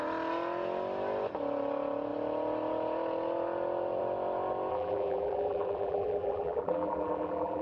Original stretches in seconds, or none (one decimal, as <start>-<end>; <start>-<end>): 0.0-4.7